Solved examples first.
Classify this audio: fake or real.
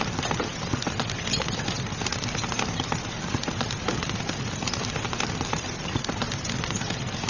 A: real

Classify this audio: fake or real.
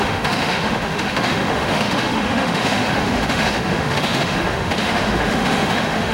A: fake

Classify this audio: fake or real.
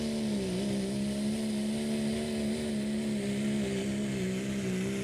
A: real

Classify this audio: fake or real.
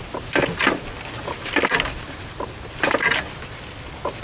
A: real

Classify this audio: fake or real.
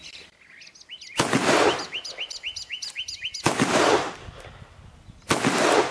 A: real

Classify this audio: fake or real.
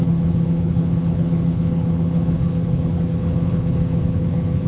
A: fake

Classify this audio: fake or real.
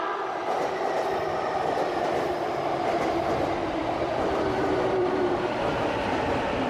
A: fake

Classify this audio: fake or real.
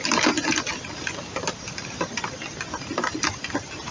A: real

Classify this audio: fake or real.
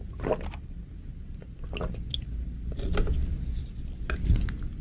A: real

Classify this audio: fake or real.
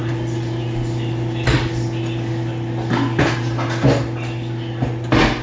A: real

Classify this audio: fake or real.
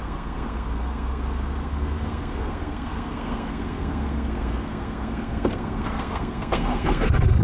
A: fake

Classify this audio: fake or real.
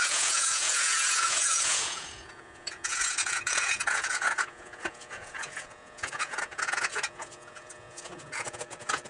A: fake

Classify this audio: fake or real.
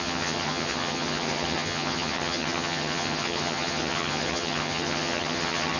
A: fake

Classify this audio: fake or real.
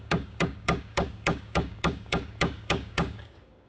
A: fake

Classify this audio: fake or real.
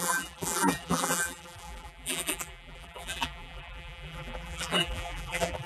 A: fake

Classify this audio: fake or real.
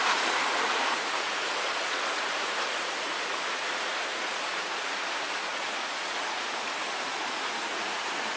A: fake